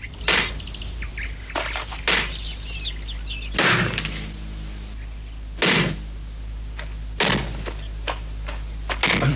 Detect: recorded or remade recorded